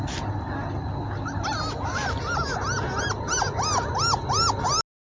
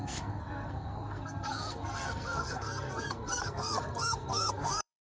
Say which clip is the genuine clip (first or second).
first